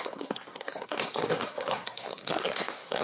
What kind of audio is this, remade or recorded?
remade